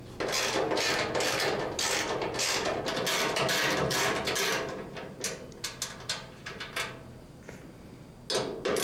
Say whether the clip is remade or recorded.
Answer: recorded